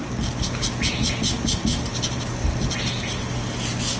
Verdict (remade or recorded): recorded